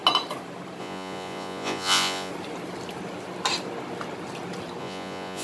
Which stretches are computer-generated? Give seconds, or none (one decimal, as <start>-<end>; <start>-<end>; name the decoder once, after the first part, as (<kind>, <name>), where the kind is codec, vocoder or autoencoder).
0.8-2.3 (vocoder, Vocos); 4.8-5.4